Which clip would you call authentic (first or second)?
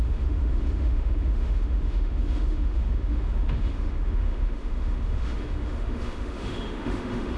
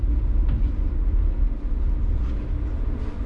second